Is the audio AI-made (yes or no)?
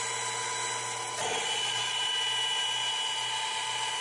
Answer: no